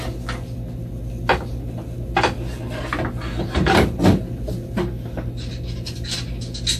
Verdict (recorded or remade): recorded